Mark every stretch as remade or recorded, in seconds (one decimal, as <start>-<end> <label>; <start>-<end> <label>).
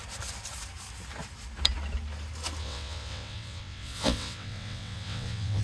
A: 0.0-2.6 recorded; 2.6-5.6 remade